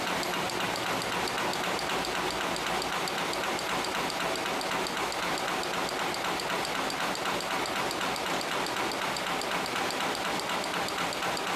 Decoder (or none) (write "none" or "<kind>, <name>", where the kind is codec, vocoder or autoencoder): none